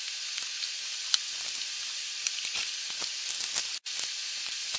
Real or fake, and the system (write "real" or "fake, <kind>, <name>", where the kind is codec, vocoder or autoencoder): real